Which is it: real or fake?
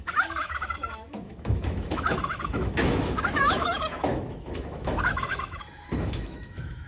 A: fake